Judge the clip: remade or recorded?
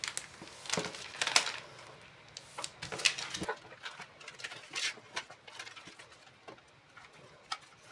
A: recorded